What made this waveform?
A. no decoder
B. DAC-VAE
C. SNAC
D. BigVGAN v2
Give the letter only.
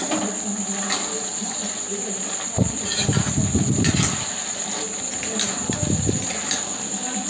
A